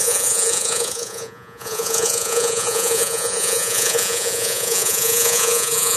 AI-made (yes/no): yes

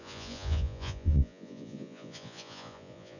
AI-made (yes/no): yes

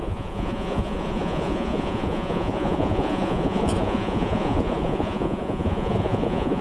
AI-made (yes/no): yes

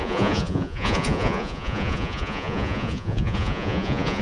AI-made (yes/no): yes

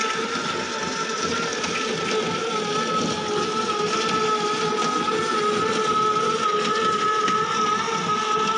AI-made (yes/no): no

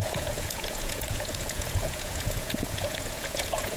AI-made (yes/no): yes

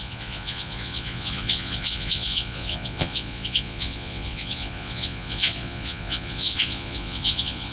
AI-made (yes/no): yes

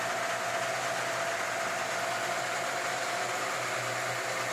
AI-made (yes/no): no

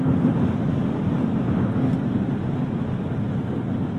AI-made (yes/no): no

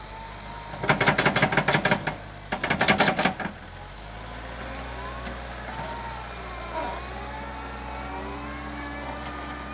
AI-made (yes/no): no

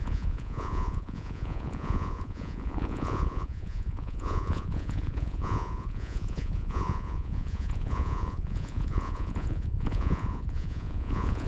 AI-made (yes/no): yes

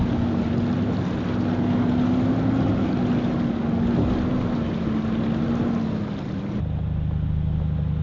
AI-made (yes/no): no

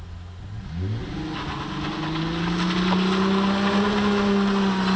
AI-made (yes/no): no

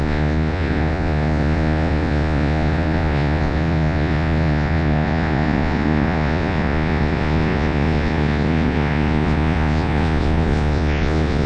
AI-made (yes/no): yes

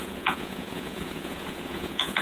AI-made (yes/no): yes